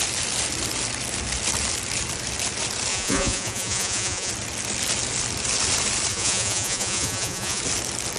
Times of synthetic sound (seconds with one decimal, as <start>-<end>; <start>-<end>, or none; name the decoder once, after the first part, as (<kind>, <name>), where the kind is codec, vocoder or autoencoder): 2.9-4.3 (vocoder, Vocos); 6.1-7.6